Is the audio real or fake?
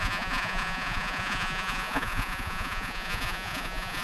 fake